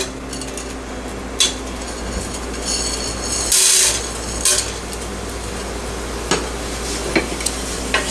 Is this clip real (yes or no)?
yes